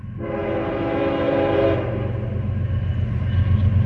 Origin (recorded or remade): recorded